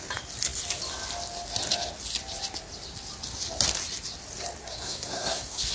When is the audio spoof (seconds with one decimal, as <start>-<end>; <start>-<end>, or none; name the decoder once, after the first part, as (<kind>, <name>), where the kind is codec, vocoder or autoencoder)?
4.6-5.7 (codec, SNAC)